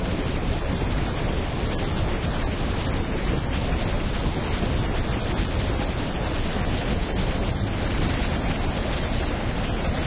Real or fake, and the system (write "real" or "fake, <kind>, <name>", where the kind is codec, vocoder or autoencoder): real